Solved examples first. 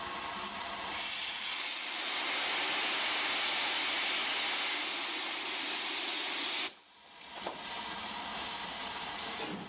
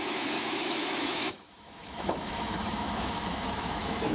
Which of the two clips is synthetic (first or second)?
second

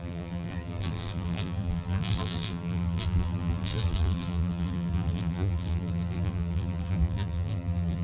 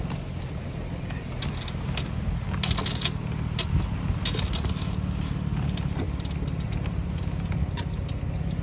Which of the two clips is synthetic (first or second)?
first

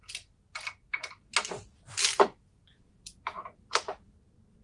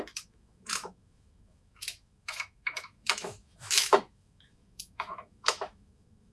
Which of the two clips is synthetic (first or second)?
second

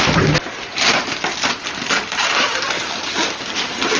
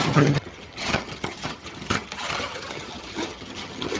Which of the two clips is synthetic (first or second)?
second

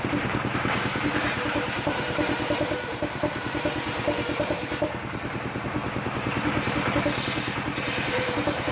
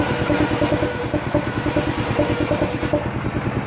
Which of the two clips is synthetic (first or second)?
first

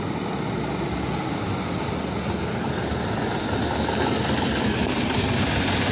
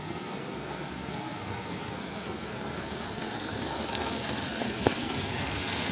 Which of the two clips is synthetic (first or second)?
second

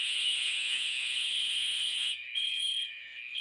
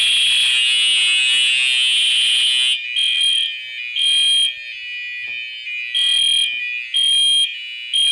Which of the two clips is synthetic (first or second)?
first